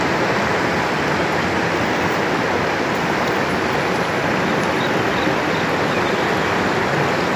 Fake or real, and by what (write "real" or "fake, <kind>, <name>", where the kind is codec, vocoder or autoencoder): real